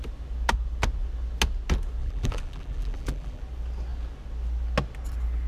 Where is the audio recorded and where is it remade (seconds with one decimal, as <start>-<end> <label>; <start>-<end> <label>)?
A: 0.0-2.0 recorded; 2.0-3.4 remade; 3.4-5.5 recorded